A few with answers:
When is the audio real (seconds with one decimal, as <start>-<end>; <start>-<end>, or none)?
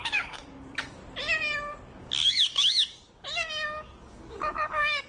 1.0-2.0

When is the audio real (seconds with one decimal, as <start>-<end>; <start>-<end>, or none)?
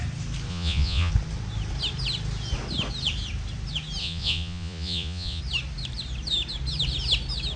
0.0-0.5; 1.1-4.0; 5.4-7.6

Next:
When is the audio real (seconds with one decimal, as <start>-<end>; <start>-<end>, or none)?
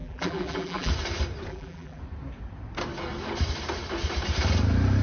0.9-1.5; 2.0-5.0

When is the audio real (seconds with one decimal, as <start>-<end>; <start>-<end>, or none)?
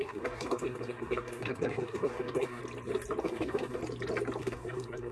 2.6-3.2; 3.8-4.4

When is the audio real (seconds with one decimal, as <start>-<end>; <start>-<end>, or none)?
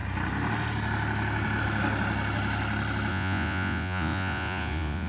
0.0-3.1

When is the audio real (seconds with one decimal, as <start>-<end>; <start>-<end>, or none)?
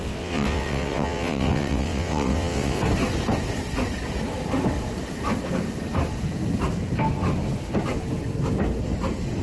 2.8-9.4